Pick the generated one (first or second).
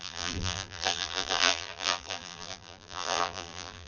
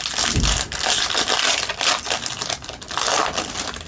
first